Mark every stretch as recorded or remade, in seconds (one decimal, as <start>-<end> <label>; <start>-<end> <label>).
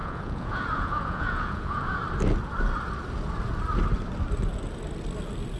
0.0-2.0 remade; 2.0-5.6 recorded